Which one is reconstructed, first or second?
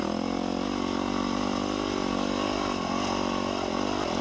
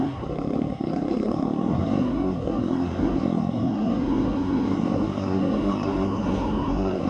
second